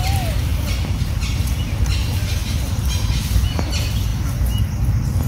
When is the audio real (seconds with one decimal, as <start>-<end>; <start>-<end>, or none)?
0.0-5.3